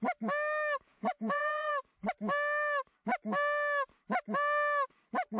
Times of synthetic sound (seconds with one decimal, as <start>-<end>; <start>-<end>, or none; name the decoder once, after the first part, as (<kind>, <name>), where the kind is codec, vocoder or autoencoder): 0.9-1.7 (vocoder, Vocos)